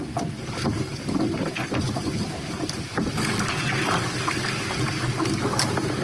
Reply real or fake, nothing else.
real